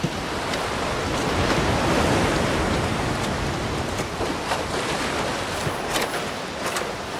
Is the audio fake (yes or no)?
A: no